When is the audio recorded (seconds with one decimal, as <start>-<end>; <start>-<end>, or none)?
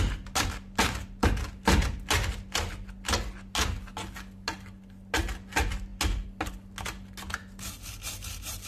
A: 0.0-8.7